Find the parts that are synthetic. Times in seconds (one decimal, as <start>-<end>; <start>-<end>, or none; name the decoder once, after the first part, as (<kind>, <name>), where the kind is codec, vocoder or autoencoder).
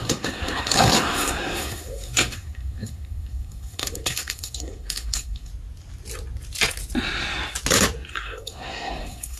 0.0-5.5 (codec, SNAC); 8.1-9.4